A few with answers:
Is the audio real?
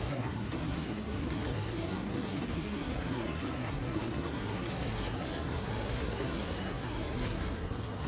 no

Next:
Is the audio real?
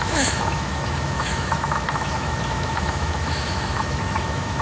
no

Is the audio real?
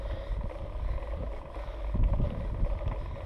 yes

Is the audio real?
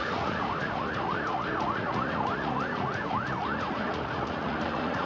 no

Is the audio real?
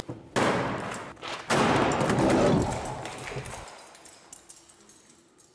yes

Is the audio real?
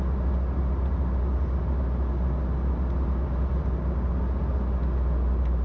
yes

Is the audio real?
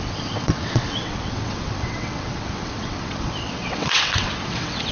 no